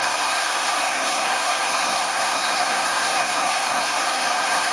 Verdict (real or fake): fake